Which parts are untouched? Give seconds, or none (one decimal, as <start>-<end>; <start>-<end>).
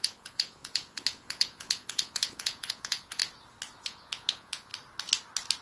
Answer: 3.2-3.8; 4.7-5.6